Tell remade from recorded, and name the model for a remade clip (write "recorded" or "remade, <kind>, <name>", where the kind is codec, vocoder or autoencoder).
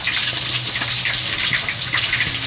recorded